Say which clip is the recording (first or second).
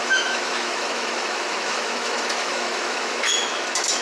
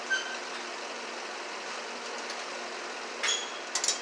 second